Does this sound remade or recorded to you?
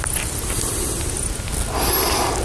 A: recorded